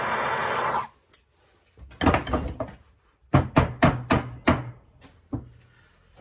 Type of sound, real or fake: real